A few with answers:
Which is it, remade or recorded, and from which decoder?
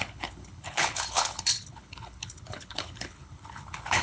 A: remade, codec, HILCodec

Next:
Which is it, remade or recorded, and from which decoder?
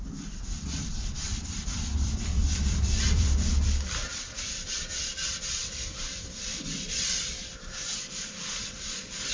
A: remade, vocoder, BigVGAN v2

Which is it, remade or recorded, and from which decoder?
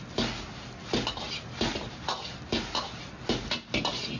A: recorded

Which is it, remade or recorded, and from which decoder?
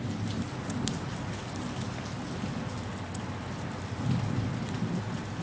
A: recorded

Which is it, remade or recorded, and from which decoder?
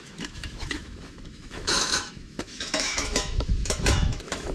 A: remade, autoencoder, DAC-VAE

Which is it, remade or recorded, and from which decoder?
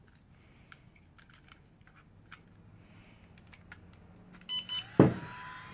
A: recorded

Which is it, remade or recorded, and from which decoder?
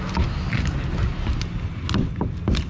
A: recorded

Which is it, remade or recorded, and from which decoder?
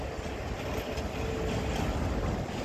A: recorded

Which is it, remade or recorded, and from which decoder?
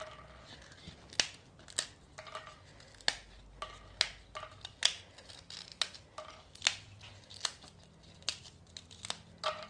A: recorded